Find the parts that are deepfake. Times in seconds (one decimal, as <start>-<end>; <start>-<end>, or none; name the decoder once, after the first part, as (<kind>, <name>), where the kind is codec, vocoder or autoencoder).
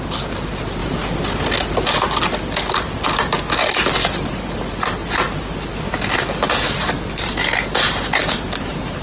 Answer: 8.2-9.0 (vocoder, BigVGAN v2)